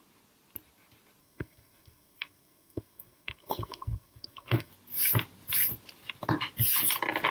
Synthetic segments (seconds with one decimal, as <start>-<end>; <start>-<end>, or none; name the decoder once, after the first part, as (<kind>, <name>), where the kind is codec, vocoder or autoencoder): 1.2-4.7 (codec, SNAC)